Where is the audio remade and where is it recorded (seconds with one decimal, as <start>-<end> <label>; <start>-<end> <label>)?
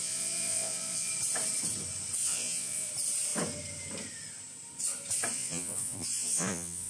0.0-1.1 remade; 1.1-2.2 recorded; 2.2-2.9 remade; 2.9-5.3 recorded; 5.3-6.9 remade